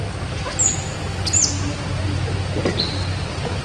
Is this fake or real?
real